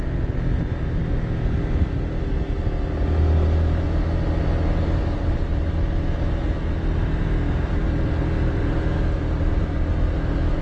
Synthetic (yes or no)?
no